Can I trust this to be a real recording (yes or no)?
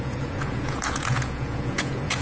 no